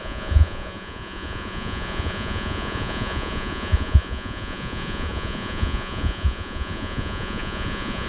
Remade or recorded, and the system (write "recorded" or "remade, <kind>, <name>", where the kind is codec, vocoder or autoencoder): remade, vocoder, Vocos